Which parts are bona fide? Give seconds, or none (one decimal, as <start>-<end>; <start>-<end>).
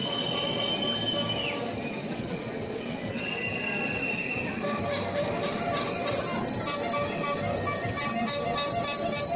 0.7-2.0; 3.3-9.4